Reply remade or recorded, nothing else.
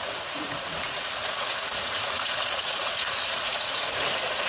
remade